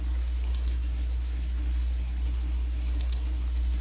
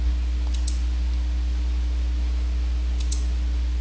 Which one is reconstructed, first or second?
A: first